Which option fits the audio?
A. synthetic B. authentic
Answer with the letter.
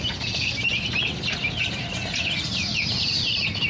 B